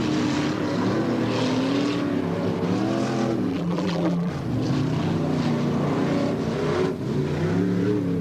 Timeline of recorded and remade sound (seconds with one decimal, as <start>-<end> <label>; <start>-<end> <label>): 0.0-3.5 recorded; 3.5-4.3 remade; 4.3-8.2 recorded